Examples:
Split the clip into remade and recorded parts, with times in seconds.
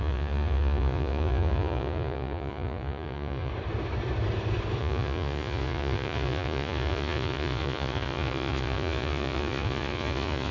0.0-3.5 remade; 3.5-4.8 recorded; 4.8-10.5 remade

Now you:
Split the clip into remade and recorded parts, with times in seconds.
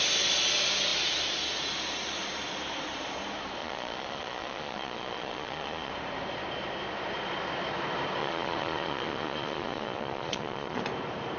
0.0-3.6 recorded; 3.6-5.9 remade; 5.9-8.2 recorded; 8.2-10.8 remade; 10.8-11.4 recorded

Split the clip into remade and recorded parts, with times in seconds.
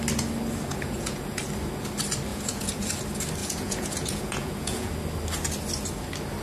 0.0-0.7 recorded; 0.7-1.4 remade; 1.4-2.3 recorded; 2.3-2.9 remade; 2.9-3.4 recorded; 3.4-4.9 remade; 4.9-6.4 recorded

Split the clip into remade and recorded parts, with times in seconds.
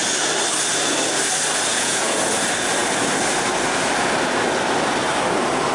0.0-1.7 recorded; 1.7-2.2 remade; 2.2-5.7 recorded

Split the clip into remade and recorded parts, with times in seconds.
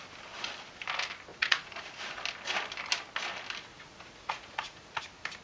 0.0-1.3 recorded; 1.3-1.9 remade; 1.9-3.7 recorded; 3.7-5.0 remade; 5.0-5.4 recorded